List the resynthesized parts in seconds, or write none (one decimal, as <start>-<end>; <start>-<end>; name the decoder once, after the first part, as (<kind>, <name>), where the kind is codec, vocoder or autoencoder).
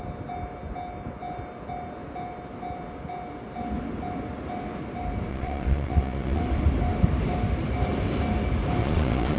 5.3-6.4 (vocoder, Vocos); 8.8-9.4